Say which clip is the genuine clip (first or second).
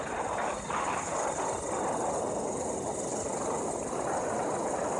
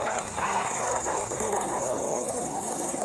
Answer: first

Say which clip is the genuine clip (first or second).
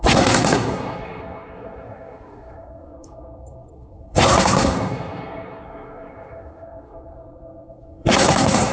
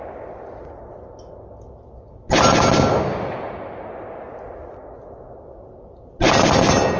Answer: second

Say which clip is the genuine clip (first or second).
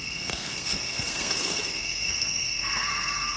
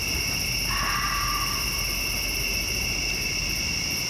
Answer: second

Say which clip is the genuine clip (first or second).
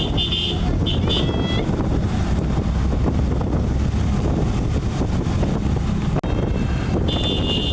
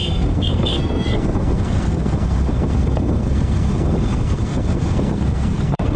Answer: first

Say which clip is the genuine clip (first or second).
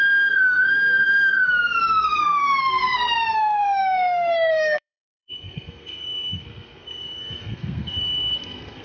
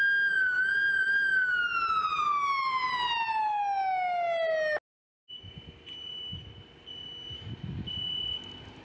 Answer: second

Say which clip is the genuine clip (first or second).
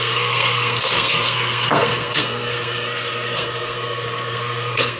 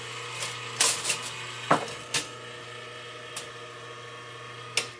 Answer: second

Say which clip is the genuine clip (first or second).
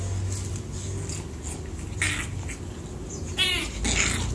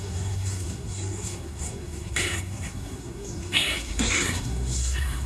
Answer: first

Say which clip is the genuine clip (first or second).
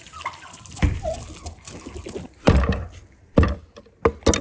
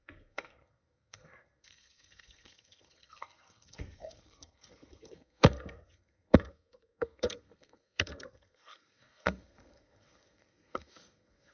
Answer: first